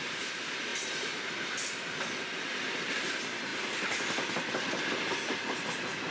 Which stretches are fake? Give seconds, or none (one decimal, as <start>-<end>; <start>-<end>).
none

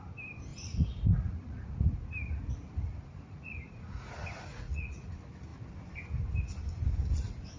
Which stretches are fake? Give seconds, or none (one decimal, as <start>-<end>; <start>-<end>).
0.5-5.1

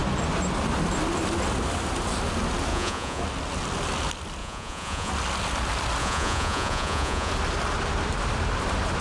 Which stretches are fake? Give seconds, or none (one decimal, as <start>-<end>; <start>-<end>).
2.7-3.2; 4.4-5.1; 6.0-7.3

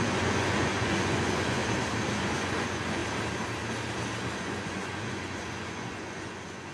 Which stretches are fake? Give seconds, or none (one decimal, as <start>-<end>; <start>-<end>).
0.0-1.6; 2.2-3.0; 4.4-6.7

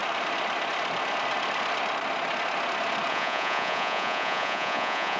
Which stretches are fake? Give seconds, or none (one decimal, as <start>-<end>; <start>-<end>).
3.1-5.2